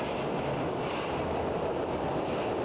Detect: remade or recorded recorded